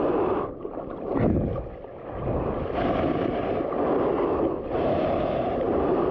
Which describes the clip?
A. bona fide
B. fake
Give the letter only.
A